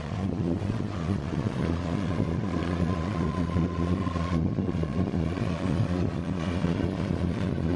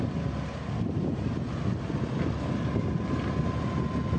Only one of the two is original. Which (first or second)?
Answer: second